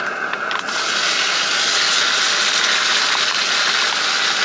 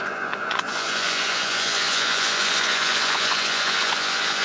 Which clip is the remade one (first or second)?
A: second